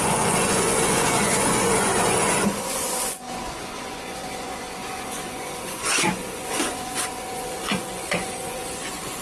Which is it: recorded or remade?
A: remade